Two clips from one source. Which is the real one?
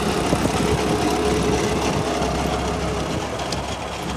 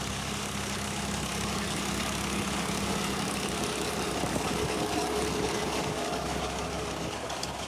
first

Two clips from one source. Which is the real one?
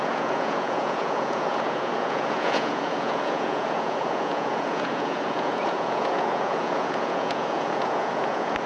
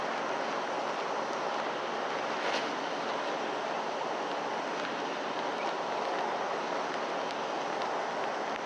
second